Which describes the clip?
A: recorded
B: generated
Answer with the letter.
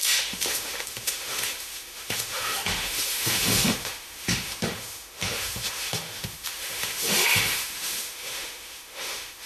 B